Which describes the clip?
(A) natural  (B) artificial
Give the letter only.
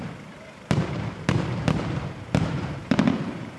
B